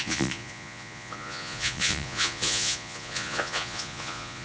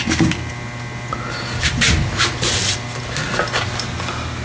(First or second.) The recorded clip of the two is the second